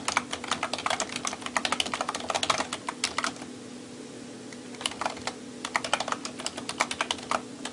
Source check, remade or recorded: recorded